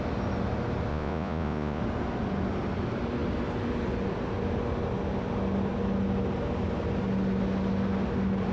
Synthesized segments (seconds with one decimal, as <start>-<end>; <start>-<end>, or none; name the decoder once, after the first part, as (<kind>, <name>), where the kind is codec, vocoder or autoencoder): 0.9-1.8 (vocoder, Vocos)